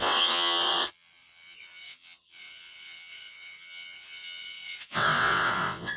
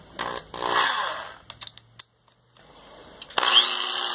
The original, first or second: second